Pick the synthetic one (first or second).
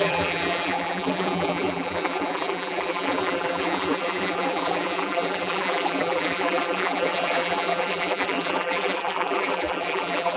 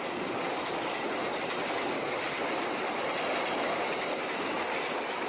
first